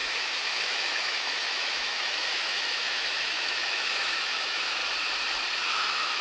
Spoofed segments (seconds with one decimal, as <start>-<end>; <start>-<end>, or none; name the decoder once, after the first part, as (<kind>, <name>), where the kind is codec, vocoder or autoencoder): 0.0-4.8 (autoencoder, DAC-VAE); 5.5-6.2